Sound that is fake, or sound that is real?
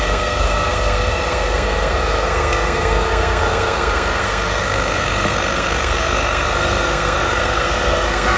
fake